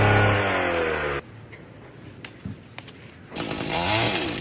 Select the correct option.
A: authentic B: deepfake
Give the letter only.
A